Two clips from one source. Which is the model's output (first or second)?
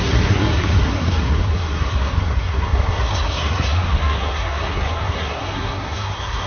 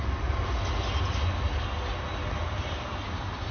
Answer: first